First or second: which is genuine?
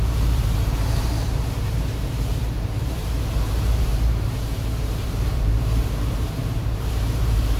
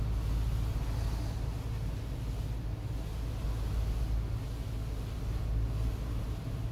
second